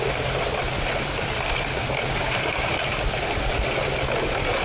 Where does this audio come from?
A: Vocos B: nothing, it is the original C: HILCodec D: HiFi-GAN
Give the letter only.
B